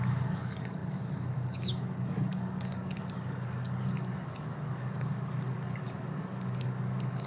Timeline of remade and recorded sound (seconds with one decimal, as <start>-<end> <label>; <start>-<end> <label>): 0.0-7.3 remade

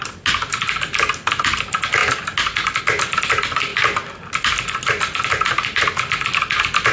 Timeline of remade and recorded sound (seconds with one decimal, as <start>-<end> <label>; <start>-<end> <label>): 0.0-6.9 recorded